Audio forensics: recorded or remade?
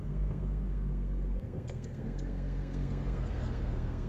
remade